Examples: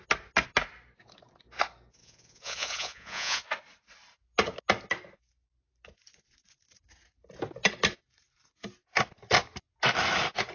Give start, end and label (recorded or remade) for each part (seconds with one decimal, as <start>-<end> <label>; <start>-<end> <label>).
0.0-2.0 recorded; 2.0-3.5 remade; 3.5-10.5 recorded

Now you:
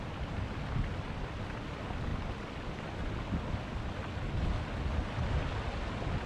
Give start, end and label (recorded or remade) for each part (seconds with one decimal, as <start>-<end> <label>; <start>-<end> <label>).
0.0-6.3 recorded

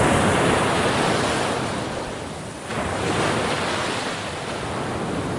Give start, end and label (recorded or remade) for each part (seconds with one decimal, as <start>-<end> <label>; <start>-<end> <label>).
0.0-5.4 recorded

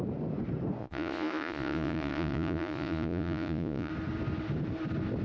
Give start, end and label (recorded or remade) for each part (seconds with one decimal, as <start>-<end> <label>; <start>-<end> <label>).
0.0-0.8 recorded; 0.8-3.9 remade; 3.9-5.2 recorded